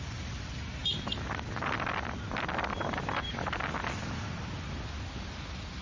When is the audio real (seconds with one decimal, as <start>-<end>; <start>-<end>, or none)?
0.0-5.8